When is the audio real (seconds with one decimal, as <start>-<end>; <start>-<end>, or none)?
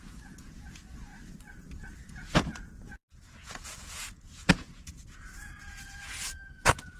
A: 1.1-1.9